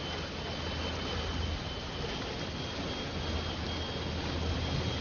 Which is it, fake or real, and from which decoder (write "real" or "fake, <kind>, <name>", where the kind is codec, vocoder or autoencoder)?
real